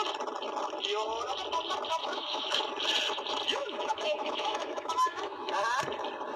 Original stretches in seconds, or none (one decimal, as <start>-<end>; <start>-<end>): 0.0-2.0; 2.6-3.6; 5.5-6.4